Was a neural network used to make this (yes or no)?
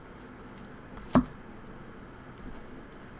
no